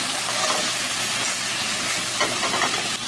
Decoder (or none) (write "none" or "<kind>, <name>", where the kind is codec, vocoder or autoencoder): none